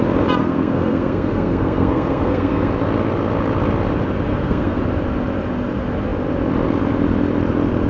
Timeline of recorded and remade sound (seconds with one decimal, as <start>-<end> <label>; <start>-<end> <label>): 0.0-0.4 recorded; 0.4-2.7 remade; 2.7-4.3 recorded; 4.3-4.8 remade; 4.8-7.9 recorded